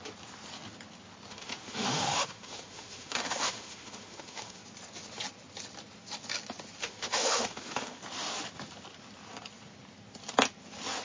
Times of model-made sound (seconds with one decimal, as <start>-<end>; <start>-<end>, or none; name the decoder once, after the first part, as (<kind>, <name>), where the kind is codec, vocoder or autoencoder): 1.3-4.6 (autoencoder, DAC-VAE); 6.8-8.0